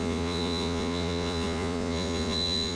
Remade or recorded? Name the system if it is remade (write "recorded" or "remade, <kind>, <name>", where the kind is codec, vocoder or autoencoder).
remade, vocoder, Vocos